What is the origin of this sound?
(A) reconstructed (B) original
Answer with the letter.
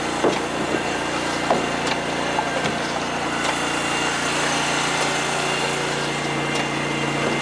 B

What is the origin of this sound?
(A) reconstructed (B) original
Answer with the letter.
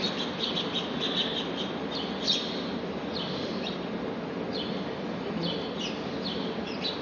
B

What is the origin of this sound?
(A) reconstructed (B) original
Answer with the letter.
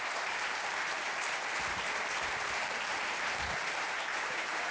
A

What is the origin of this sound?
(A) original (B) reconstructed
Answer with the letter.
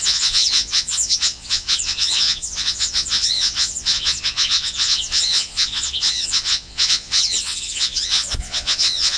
B